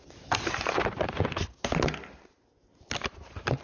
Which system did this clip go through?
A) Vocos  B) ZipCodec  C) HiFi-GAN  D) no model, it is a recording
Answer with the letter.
D